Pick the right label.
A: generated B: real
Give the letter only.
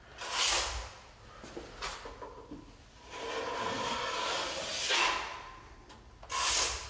B